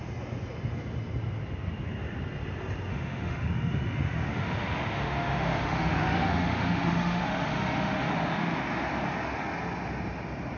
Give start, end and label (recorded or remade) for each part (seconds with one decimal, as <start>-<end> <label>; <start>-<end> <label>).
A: 0.0-2.9 recorded; 2.9-8.1 remade; 8.1-10.6 recorded